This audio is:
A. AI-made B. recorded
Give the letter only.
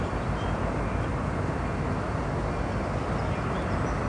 B